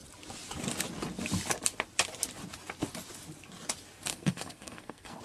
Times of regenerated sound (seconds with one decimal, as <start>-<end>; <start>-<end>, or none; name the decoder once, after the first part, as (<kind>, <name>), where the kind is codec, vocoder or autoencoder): 4.1-5.2 (codec, SNAC)